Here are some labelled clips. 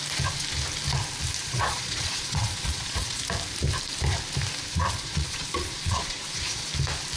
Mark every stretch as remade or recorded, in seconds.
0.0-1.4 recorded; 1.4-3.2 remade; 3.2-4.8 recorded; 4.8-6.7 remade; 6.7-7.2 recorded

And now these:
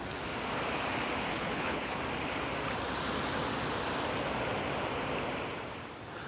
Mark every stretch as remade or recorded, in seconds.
0.0-1.3 recorded; 1.3-2.0 remade; 2.0-6.3 recorded

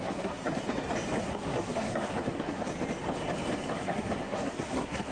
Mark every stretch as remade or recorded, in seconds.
0.0-0.6 remade; 0.6-1.2 recorded; 1.2-2.7 remade; 2.7-3.7 recorded; 3.7-5.1 remade

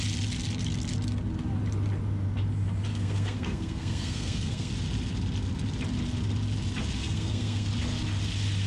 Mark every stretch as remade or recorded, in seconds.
0.0-2.9 recorded; 2.9-4.7 remade; 4.7-7.0 recorded; 7.0-7.7 remade; 7.7-8.7 recorded